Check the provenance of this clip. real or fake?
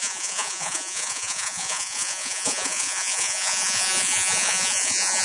fake